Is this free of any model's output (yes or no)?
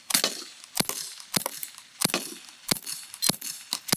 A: yes